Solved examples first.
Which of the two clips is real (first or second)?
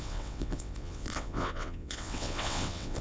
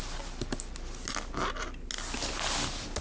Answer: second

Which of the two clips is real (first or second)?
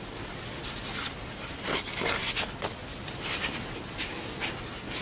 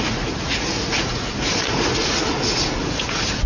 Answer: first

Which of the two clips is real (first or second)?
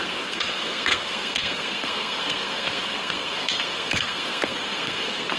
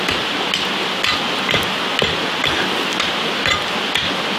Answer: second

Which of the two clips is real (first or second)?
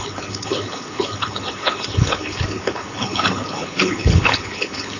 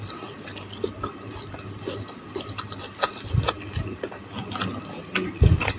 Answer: second